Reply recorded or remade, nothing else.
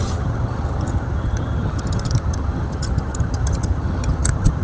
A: remade